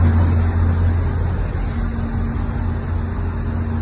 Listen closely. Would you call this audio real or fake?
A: real